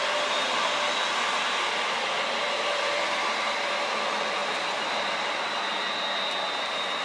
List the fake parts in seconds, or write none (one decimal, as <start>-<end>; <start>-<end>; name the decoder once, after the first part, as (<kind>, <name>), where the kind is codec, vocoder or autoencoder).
4.4-5.4 (vocoder, BigVGAN v2)